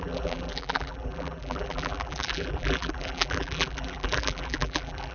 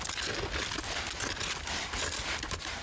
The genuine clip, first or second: second